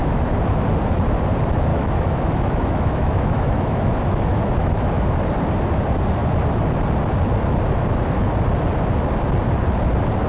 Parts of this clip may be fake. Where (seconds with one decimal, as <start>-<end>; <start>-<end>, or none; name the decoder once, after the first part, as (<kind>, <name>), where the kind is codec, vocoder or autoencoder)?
0.0-0.7 (autoencoder, DAC-VAE); 1.7-5.2